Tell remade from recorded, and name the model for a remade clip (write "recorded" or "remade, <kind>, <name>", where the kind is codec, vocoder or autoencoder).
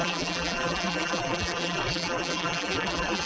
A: remade, vocoder, BigVGAN v2